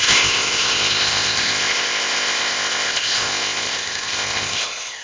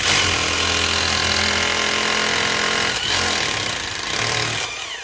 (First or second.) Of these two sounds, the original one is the second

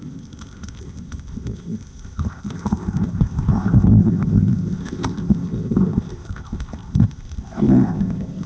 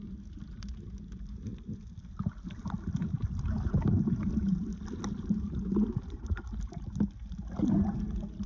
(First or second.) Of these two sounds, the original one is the second